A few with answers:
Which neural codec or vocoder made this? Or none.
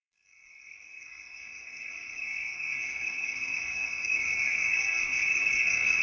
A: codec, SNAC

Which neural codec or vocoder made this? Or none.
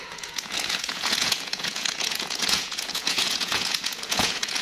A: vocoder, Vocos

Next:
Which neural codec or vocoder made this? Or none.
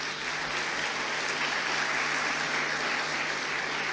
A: none